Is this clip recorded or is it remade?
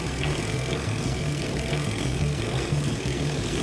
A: remade